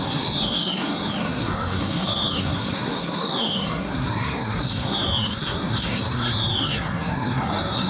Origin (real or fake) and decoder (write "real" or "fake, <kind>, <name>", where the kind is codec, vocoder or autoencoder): fake, codec, SNAC